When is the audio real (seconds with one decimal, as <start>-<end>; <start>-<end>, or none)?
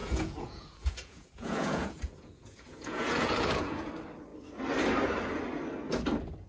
3.9-6.5